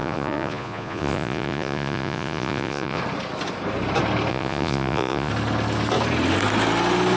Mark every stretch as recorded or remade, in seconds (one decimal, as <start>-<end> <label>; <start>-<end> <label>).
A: 0.0-3.0 remade; 3.0-4.3 recorded; 4.3-5.3 remade; 5.3-7.2 recorded